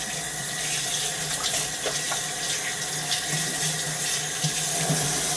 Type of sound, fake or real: real